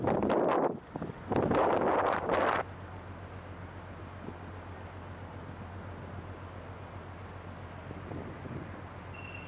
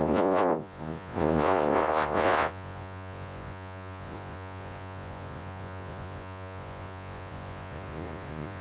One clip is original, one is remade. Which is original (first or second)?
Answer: first